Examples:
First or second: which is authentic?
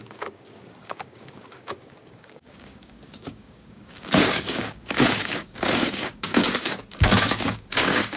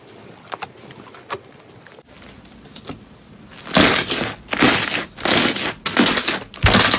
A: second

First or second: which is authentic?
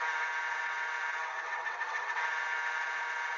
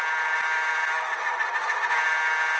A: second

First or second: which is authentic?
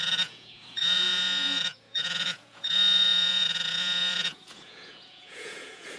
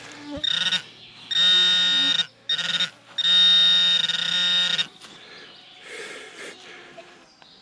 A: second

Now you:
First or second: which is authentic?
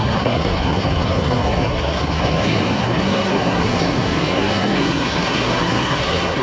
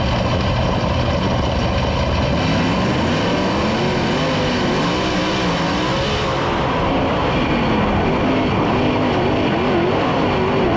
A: second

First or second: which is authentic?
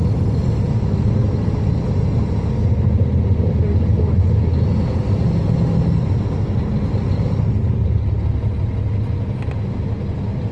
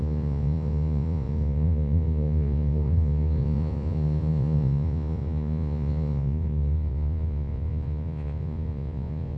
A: first